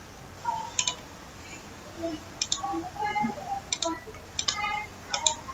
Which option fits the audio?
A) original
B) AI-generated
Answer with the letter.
A